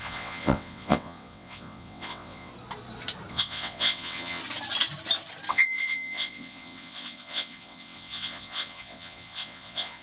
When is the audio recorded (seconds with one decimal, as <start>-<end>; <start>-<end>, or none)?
2.5-3.3; 4.4-5.5